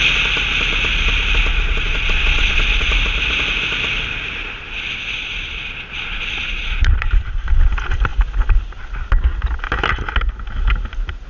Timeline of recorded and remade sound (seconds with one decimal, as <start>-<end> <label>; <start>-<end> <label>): 0.0-1.5 recorded; 1.5-2.9 remade; 2.9-4.4 recorded; 4.4-7.1 remade; 7.1-11.3 recorded